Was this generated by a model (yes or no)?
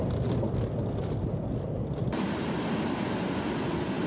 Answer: no